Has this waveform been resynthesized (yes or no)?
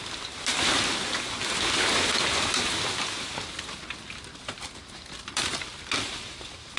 yes